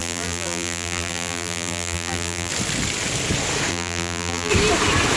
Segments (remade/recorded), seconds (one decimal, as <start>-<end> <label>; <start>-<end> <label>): 0.0-2.5 remade; 2.5-3.7 recorded; 3.7-4.5 remade; 4.5-5.2 recorded